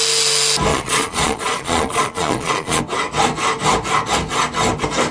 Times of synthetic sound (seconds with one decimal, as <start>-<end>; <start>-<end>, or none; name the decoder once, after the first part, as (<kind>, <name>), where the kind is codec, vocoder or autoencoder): 0.7-2.8 (vocoder, Vocos)